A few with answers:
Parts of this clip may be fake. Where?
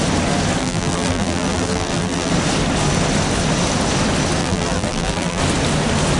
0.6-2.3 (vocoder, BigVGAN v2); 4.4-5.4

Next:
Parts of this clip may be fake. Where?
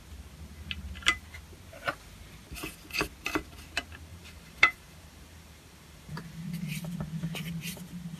4.1-6.1 (vocoder, BigVGAN v2)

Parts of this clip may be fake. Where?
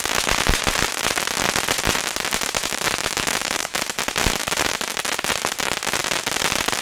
3.0-3.8 (autoencoder, DAC-VAE)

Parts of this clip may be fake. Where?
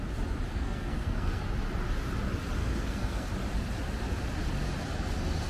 0.5-1.4 (codec, SNAC); 2.6-3.3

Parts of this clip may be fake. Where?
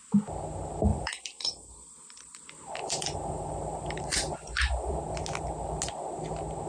0.9-4.9 (vocoder, BigVGAN v2)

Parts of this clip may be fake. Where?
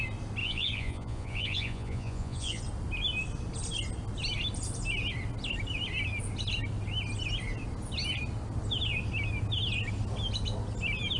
0.4-2.6 (vocoder, Vocos)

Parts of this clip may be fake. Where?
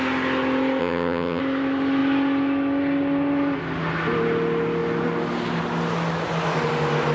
0.8-1.4 (vocoder, HiFi-GAN)